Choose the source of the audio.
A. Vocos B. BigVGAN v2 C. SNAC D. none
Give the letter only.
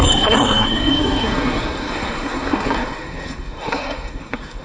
C